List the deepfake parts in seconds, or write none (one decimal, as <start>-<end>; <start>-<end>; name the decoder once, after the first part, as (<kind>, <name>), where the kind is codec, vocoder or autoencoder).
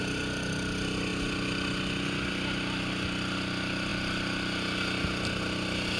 none